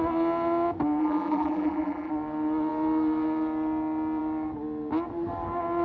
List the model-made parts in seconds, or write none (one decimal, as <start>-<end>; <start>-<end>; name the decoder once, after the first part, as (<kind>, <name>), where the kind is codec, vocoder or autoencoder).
1.0-2.1 (vocoder, BigVGAN v2)